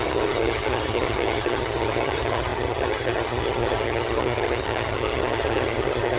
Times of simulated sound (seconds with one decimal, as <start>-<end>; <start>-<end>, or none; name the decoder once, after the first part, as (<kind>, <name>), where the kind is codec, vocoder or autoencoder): 0.0-6.2 (vocoder, HiFi-GAN)